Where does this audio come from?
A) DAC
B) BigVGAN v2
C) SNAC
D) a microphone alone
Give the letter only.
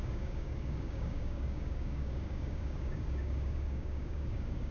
A